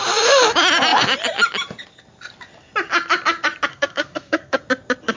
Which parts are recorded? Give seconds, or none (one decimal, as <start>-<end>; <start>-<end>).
0.0-3.7; 4.6-5.2